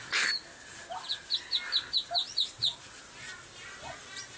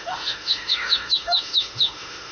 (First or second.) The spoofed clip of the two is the second